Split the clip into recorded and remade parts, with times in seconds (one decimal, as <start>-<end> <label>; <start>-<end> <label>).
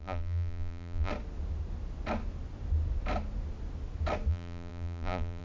0.0-1.1 remade; 1.1-4.3 recorded; 4.3-5.4 remade